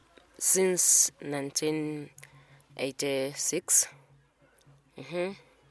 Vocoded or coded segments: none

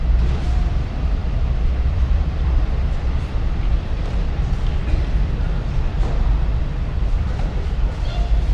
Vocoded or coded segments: 0.0-8.5

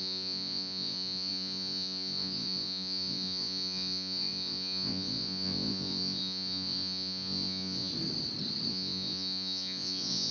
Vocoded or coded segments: 0.0-7.9; 8.7-10.3

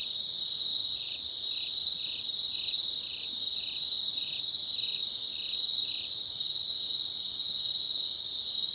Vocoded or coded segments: none

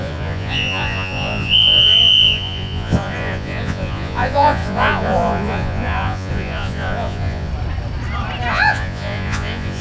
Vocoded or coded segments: 0.0-7.5; 8.5-9.8